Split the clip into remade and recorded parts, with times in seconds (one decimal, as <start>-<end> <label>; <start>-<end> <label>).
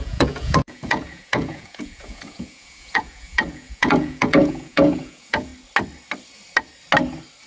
0.0-5.5 remade; 5.5-7.5 recorded